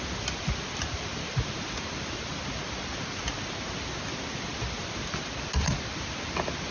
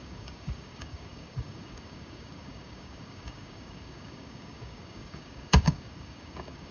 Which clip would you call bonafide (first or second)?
first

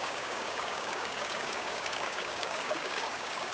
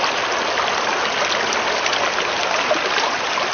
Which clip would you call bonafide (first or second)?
second